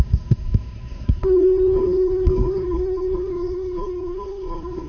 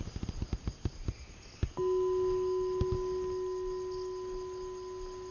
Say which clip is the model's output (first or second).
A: first